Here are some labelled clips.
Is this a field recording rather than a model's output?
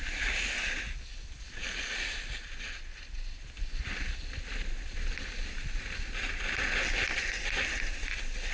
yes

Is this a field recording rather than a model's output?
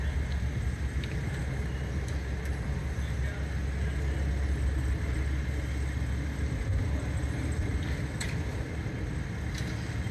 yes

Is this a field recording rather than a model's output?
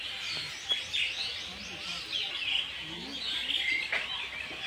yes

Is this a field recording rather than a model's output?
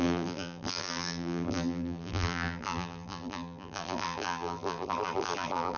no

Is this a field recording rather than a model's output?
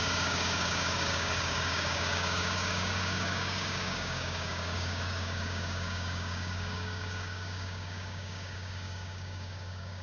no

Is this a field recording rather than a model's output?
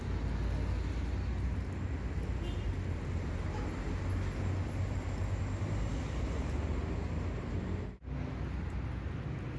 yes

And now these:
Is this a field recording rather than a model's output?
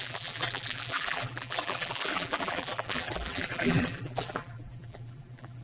no